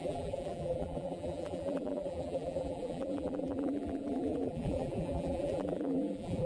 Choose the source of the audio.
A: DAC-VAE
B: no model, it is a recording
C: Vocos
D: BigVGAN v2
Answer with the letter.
D